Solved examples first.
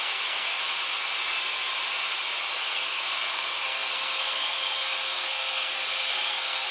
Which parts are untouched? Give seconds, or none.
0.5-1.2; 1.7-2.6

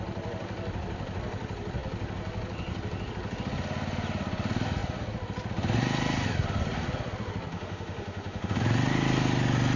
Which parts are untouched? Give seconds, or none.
0.0-7.5; 8.6-9.8

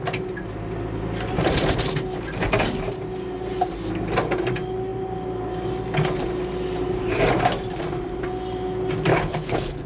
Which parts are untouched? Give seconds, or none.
0.0-9.1

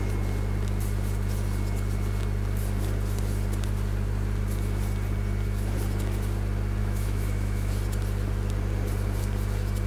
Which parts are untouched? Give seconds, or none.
0.0-6.8; 7.7-9.9

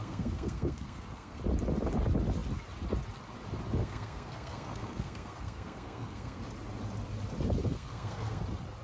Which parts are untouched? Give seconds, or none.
1.4-3.8; 6.4-7.6; 8.4-8.8

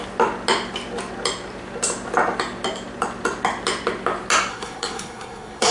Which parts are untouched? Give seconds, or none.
0.0-4.5

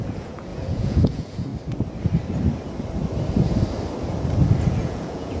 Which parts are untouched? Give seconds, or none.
1.5-4.7